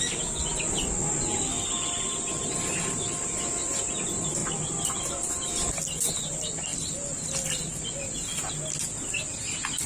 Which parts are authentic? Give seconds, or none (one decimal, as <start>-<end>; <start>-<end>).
0.0-4.4; 5.5-9.9